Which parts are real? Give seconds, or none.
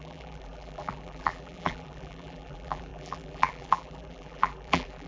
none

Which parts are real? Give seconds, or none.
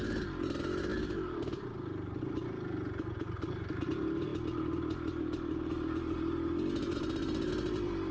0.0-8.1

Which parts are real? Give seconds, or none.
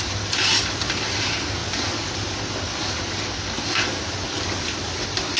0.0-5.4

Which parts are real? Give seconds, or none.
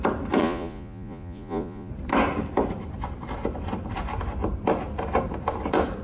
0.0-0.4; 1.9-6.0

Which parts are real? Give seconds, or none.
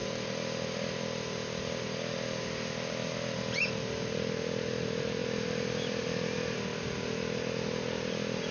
0.0-8.5